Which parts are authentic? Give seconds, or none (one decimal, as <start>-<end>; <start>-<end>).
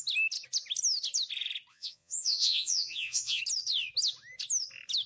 0.0-1.7; 3.4-5.1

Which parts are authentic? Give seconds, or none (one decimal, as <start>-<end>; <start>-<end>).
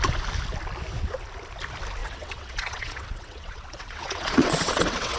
0.0-2.0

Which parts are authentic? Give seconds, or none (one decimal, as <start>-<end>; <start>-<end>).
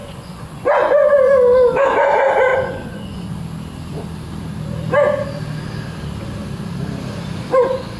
1.3-2.5; 3.3-8.0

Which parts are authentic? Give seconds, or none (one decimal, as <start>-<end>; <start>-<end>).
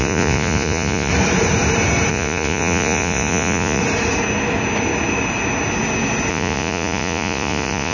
1.1-2.1; 3.8-6.3